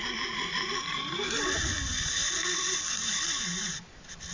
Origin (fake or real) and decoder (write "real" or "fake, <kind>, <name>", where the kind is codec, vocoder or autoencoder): real